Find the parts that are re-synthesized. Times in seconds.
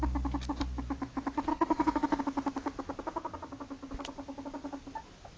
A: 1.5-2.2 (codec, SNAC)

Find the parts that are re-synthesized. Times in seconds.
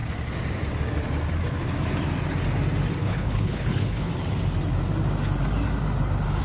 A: 3.0-4.1 (codec, HILCodec)